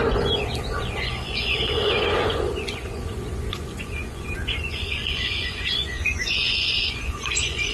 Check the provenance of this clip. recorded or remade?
remade